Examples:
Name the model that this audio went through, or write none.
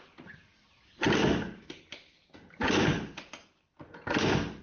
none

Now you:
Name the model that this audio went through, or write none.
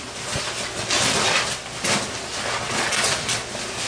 none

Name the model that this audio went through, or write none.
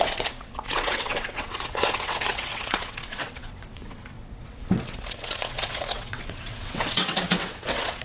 vocoder, WaveNeXt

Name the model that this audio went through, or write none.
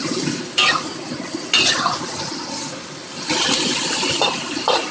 none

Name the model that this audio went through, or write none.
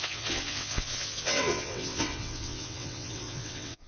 vocoder, WaveNeXt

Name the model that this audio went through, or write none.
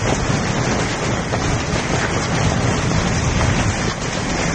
none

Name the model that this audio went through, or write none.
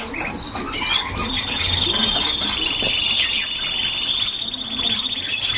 none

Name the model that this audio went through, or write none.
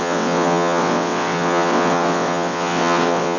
vocoder, WaveNeXt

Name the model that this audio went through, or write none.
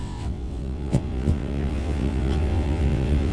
vocoder, WaveNeXt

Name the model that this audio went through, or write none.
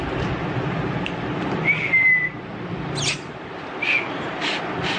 none